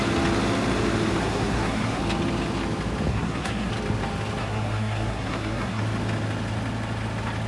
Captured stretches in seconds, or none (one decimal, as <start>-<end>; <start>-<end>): 0.0-1.2; 2.0-3.1; 3.7-4.4; 5.8-7.5